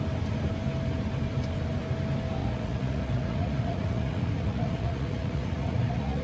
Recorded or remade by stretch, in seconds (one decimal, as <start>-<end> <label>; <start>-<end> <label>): 0.0-2.4 recorded; 2.4-6.2 remade